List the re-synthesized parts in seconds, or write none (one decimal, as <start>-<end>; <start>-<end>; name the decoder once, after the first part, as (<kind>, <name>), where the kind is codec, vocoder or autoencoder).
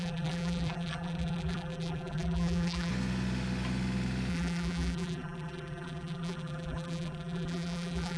0.0-2.9 (vocoder, BigVGAN v2); 4.3-8.2